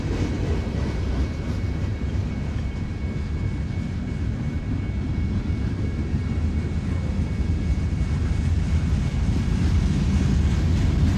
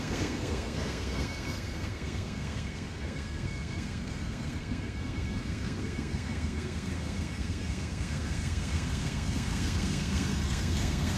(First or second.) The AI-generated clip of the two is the second